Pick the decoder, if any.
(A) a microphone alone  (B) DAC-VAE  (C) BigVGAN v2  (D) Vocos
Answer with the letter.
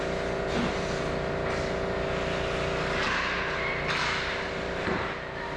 A